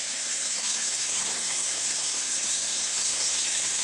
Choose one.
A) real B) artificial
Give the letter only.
B